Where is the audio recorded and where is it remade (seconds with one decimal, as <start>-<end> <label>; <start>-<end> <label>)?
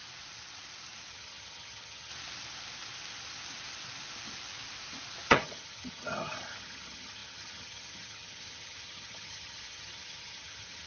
0.0-1.1 recorded; 1.1-2.1 remade; 2.1-5.3 recorded; 5.3-10.9 remade